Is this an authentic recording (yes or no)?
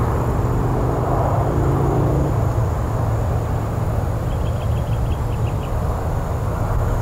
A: yes